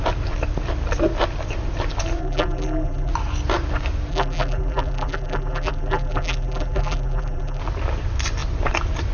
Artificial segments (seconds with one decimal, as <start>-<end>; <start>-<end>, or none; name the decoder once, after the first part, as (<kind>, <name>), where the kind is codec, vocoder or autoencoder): 2.2-3.1 (vocoder, BigVGAN v2); 4.1-7.6

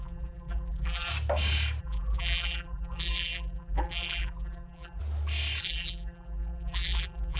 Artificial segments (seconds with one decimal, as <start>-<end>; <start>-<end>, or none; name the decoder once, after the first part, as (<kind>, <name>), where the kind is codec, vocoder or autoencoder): 0.0-1.1 (vocoder, BigVGAN v2); 1.8-5.0; 5.6-7.4

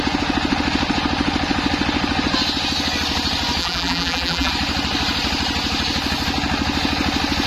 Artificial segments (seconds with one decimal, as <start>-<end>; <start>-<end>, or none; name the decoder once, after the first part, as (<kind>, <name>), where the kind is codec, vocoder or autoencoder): 3.6-4.5 (vocoder, BigVGAN v2)

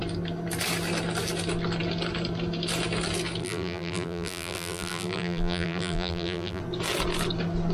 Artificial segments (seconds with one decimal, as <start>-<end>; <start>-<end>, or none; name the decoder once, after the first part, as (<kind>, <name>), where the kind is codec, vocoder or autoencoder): 3.4-6.6 (vocoder, BigVGAN v2)

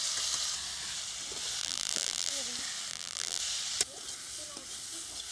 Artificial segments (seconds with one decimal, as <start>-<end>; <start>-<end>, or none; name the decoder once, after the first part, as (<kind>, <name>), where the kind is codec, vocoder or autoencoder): 1.6-2.3 (vocoder, BigVGAN v2); 2.9-3.4

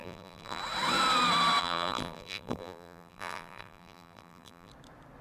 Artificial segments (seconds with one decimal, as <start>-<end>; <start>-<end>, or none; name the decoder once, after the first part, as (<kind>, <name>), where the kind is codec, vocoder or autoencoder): 0.0-0.6 (vocoder, BigVGAN v2); 1.6-4.7